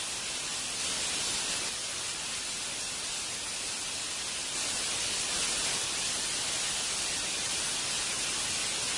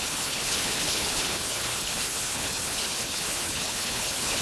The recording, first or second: first